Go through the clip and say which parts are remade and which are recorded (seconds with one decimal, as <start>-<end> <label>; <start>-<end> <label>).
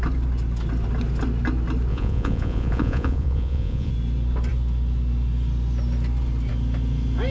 0.0-1.9 recorded; 1.9-3.9 remade; 3.9-7.3 recorded